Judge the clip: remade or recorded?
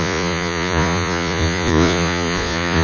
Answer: remade